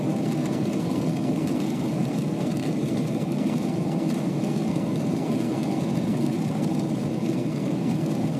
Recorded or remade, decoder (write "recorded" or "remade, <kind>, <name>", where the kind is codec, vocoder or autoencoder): remade, codec, SNAC